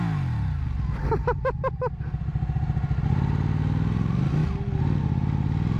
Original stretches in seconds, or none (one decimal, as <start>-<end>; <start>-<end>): 0.0-5.8